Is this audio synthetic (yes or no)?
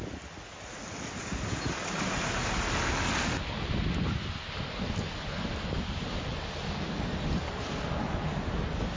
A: no